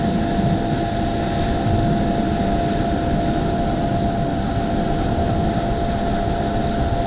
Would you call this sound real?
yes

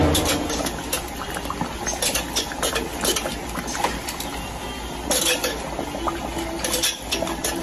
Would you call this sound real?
yes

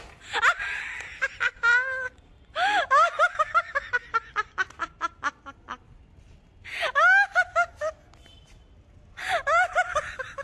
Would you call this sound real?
yes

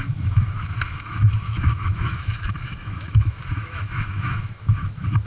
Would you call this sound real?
no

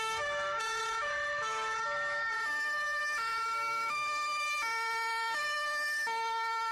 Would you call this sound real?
no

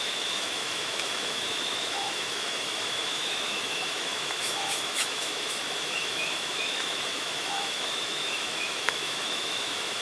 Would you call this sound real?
no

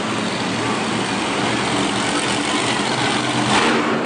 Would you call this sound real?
yes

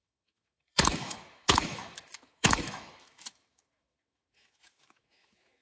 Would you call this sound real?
no